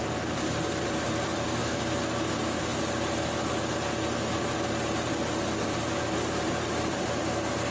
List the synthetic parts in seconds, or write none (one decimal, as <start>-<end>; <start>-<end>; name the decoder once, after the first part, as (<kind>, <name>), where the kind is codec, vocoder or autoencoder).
0.0-1.6 (vocoder, BigVGAN v2); 2.3-2.7; 5.6-7.7